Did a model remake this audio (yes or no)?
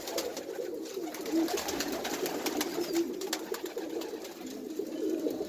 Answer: no